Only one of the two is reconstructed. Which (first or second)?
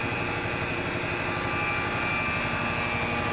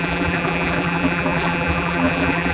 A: second